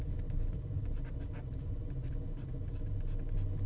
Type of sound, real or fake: real